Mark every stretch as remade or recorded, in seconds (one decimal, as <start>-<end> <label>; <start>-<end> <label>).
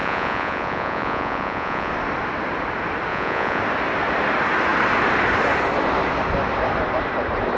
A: 0.0-1.9 remade; 1.9-3.1 recorded; 3.1-3.6 remade; 3.6-7.6 recorded